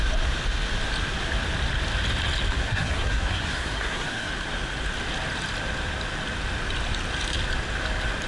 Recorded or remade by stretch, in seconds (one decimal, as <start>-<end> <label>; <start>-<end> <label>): 0.0-2.6 recorded; 2.6-4.3 remade; 4.3-8.3 recorded